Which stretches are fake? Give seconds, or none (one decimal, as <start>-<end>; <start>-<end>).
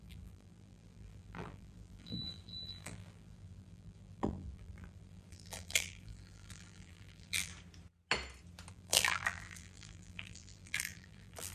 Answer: 0.0-7.5; 8.7-11.5